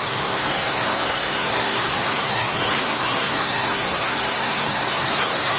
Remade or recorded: remade